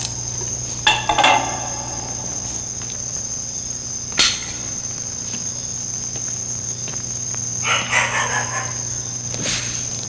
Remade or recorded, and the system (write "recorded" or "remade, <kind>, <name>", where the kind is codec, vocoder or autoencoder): recorded